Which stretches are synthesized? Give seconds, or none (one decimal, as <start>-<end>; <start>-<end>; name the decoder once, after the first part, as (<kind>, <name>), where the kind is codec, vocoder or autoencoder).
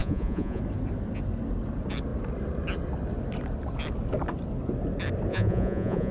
0.0-0.6 (vocoder, Vocos); 5.3-6.1